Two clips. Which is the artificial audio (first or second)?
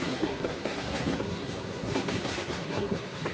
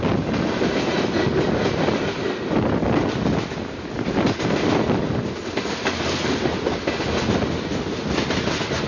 first